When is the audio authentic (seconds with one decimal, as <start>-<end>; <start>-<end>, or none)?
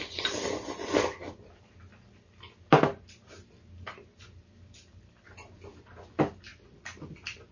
1.9-5.0